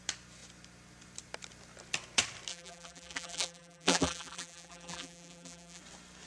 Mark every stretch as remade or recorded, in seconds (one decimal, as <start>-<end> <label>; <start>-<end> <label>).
0.0-2.5 recorded; 2.5-5.8 remade; 5.8-6.3 recorded